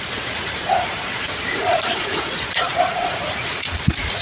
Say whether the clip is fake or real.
fake